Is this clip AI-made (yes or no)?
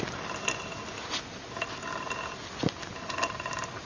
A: no